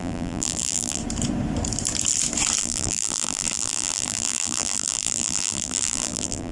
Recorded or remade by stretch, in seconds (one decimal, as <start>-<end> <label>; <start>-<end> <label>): 0.0-1.0 remade; 1.0-2.6 recorded; 2.6-6.5 remade